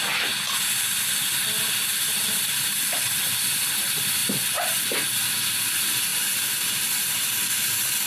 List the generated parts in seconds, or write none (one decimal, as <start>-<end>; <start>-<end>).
none